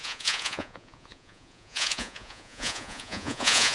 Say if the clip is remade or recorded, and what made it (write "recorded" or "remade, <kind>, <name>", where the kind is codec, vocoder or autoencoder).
remade, vocoder, Vocos